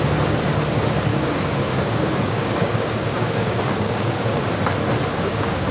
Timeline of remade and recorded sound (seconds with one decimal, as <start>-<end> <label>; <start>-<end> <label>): 0.0-1.1 recorded; 1.1-4.5 remade; 4.5-5.1 recorded; 5.1-5.7 remade